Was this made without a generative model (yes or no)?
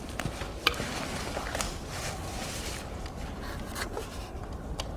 no